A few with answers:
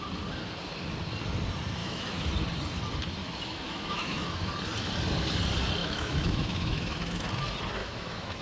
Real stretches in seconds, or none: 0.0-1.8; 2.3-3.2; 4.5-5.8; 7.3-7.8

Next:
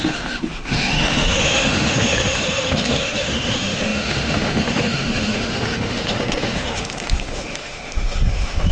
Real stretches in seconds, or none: none

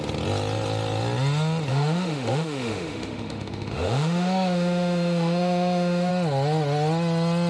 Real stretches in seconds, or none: 0.0-1.7; 6.1-7.5

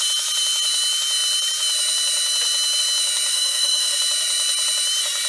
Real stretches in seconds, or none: 0.0-3.3; 4.0-5.3